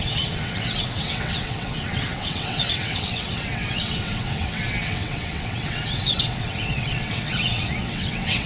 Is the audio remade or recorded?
remade